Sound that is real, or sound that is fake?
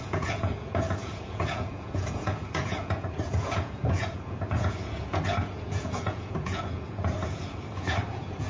fake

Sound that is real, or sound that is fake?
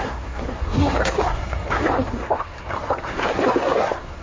fake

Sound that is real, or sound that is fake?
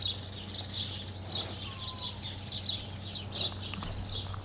real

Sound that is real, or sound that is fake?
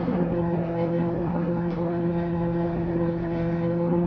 fake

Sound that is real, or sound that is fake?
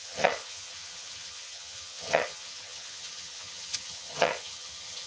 fake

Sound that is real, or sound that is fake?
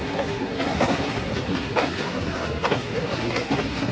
fake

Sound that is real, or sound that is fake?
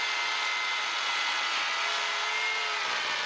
real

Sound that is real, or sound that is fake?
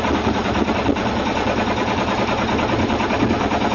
real